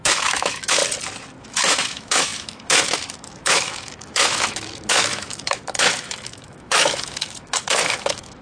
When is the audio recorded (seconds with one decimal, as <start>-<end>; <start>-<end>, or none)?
0.8-1.4